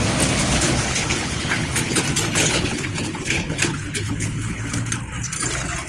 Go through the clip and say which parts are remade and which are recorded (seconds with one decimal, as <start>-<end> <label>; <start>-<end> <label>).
0.0-0.4 recorded; 0.4-2.0 remade; 2.0-2.4 recorded; 2.4-4.9 remade; 4.9-5.9 recorded